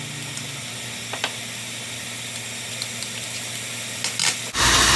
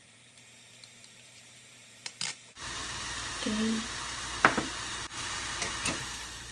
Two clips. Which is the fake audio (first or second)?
second